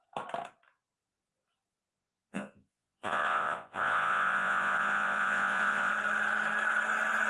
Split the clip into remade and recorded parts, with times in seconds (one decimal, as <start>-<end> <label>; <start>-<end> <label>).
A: 0.0-1.9 recorded; 1.9-5.9 remade; 5.9-7.3 recorded